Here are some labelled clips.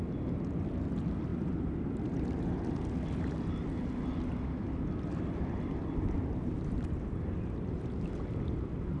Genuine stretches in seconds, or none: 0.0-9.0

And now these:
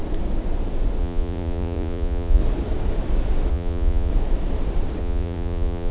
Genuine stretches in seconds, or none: 0.0-1.0; 2.4-3.5; 4.1-5.0

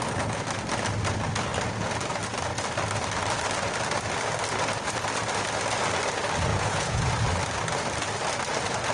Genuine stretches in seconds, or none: 0.0-6.5; 7.1-8.9